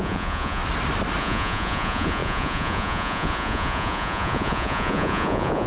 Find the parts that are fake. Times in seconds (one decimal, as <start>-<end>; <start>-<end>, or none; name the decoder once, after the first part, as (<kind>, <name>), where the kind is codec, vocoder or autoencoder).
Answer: 0.0-0.6 (vocoder, Vocos); 1.2-5.7